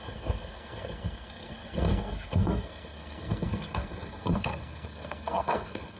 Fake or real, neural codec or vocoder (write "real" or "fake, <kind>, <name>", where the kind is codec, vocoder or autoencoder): fake, codec, SNAC